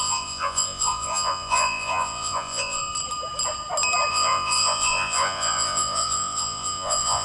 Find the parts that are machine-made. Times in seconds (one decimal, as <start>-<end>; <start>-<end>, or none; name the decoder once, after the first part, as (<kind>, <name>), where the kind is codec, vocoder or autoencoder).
0.0-2.8 (vocoder, Vocos); 4.1-7.2